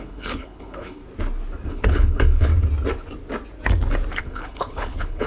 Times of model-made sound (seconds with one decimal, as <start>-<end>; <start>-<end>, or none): 0.0-1.0; 1.7-2.5; 4.2-5.3